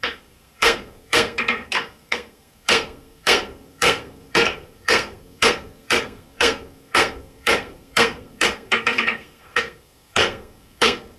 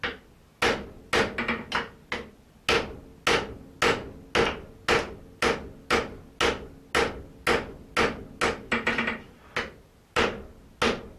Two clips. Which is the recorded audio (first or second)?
second